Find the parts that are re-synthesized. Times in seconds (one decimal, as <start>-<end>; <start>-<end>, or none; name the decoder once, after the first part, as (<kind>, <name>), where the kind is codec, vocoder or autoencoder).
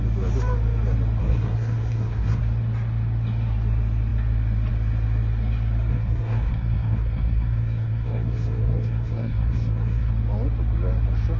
1.2-2.4 (codec, SNAC); 5.9-10.1